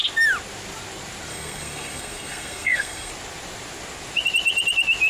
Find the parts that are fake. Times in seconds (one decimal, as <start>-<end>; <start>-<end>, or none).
1.3-3.1